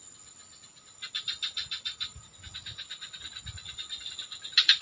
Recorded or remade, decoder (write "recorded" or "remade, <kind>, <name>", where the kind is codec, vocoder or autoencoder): recorded